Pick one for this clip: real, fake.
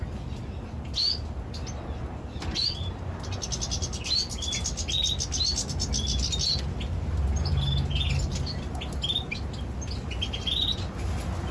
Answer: real